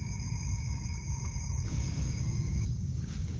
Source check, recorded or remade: remade